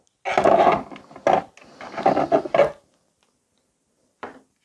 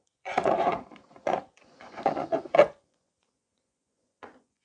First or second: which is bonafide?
first